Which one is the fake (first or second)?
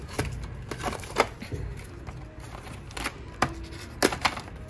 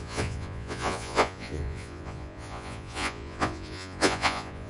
second